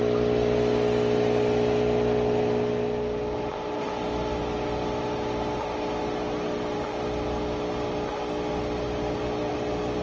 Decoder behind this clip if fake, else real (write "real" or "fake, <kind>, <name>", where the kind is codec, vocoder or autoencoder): real